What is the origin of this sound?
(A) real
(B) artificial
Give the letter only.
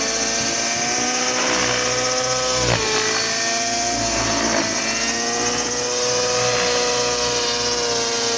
A